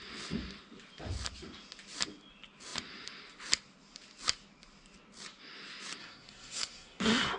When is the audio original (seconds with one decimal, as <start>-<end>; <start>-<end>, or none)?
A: 0.0-6.0; 7.0-7.4